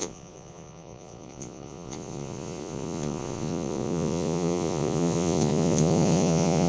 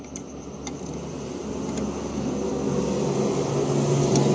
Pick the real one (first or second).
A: second